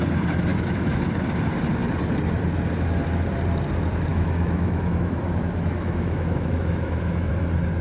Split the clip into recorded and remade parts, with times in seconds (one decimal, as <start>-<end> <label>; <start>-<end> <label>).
0.0-0.5 recorded; 0.5-1.0 remade; 1.0-4.1 recorded; 4.1-7.3 remade; 7.3-7.8 recorded